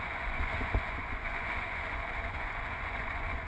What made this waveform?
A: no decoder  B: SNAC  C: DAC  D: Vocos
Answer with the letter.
D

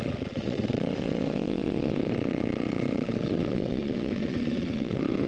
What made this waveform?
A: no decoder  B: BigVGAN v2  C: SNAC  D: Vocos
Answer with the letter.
D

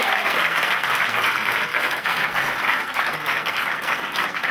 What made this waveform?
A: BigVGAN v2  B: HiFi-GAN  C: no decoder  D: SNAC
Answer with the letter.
D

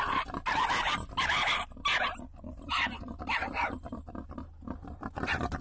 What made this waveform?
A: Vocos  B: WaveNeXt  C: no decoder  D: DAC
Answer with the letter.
C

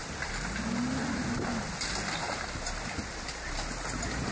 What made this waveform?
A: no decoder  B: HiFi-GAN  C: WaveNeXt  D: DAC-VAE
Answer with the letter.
A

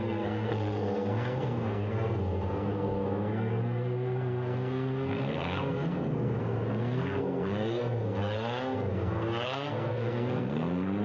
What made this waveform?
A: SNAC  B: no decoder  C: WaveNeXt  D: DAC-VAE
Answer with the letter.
A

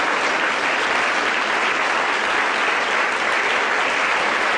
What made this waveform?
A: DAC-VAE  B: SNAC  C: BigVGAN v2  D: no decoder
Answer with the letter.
D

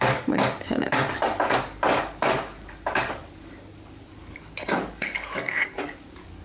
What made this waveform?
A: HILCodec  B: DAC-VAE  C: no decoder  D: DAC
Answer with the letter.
D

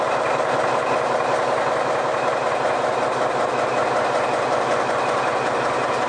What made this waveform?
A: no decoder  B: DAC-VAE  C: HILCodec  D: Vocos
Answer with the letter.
A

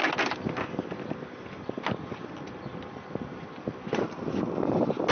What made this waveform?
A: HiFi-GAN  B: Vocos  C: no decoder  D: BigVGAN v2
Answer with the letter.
C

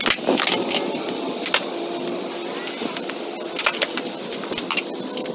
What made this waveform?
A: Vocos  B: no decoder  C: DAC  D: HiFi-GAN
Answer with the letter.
B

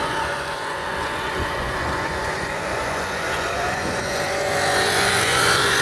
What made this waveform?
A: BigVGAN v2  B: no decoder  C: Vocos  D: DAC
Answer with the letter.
C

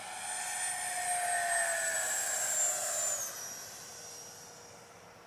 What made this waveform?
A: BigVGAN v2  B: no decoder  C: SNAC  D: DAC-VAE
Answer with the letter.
B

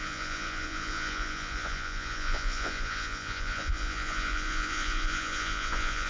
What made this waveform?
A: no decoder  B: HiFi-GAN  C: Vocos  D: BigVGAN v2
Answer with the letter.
C